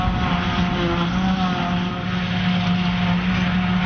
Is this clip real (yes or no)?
yes